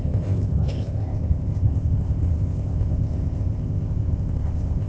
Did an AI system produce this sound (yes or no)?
yes